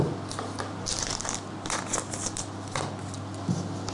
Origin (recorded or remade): remade